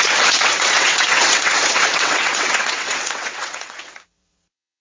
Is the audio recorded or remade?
remade